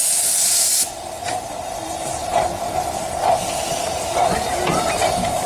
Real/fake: real